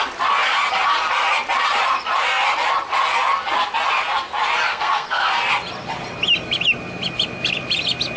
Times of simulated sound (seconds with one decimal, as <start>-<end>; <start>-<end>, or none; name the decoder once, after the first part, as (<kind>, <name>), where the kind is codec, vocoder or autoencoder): 4.7-5.4 (codec, SNAC)